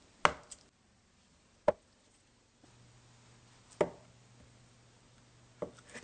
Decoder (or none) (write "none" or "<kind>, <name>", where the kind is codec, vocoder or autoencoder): none